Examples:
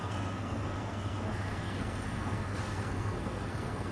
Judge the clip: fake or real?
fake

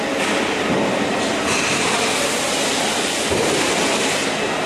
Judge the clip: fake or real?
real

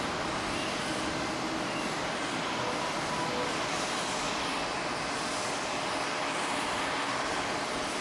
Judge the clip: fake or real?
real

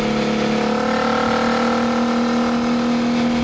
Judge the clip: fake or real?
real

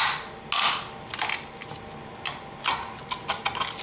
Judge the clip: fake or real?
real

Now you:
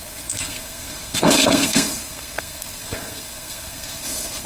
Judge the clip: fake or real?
fake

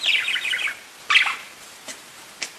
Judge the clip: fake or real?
real